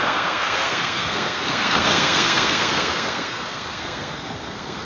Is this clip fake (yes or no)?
yes